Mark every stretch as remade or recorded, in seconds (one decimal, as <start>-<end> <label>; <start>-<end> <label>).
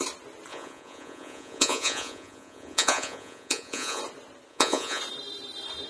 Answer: 0.0-0.5 recorded; 0.5-4.0 remade; 4.0-4.5 recorded; 4.5-5.0 remade; 5.0-5.9 recorded